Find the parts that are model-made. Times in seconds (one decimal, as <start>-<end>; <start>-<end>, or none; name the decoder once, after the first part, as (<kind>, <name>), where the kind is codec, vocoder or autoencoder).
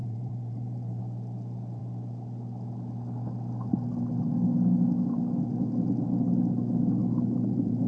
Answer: 0.0-1.0 (vocoder, BigVGAN v2); 7.0-7.9